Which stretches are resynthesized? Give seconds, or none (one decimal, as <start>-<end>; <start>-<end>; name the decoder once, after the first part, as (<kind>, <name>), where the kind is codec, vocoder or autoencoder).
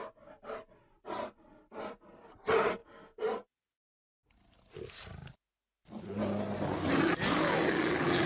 none